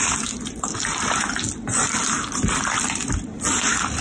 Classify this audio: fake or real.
real